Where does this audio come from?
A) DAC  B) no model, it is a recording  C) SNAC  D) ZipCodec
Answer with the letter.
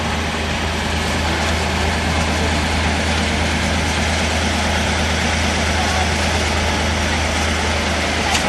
B